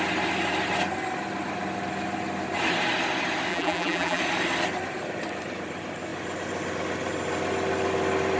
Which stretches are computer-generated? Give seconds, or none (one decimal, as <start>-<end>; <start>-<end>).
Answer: 3.5-4.2